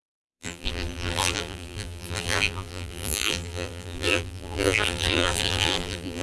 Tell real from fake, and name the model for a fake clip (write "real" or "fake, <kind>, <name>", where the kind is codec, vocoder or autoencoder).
fake, vocoder, BigVGAN v2